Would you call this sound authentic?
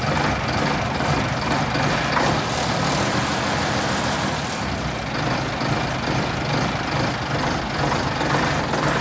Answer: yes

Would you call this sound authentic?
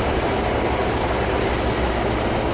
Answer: yes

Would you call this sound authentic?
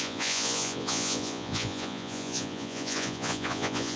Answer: no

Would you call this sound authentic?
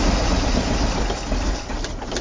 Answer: yes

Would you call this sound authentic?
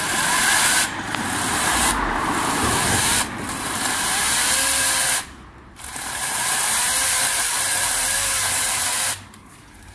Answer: no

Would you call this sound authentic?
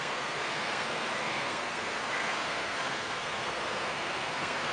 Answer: no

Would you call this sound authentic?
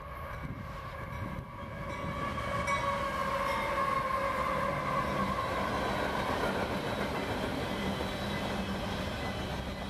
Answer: yes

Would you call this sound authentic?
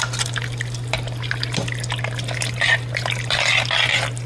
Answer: yes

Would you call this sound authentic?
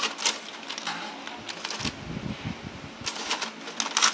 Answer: yes